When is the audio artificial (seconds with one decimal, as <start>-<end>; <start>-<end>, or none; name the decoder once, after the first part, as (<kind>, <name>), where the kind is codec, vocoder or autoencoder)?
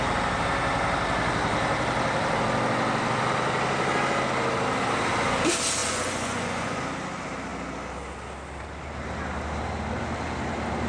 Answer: 5.8-6.8 (vocoder, Vocos)